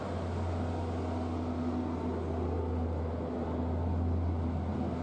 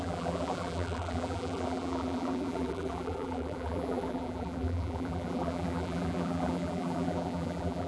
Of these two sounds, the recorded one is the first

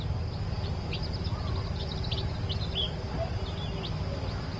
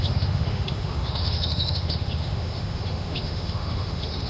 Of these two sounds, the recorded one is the first